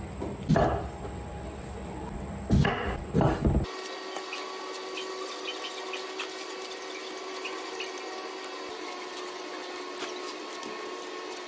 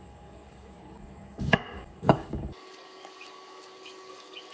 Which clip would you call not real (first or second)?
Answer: second